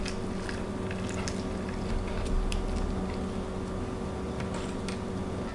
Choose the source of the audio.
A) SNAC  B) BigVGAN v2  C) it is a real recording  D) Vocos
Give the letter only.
C